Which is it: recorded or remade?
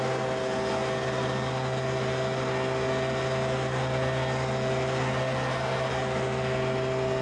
recorded